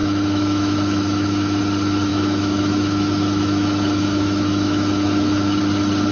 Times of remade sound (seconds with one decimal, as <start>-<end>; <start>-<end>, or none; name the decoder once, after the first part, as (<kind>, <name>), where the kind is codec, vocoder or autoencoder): 0.0-1.6 (autoencoder, DAC-VAE); 2.1-5.6